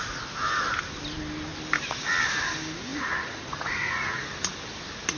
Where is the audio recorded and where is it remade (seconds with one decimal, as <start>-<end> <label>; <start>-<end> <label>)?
0.0-2.9 recorded; 2.9-4.2 remade; 4.2-5.2 recorded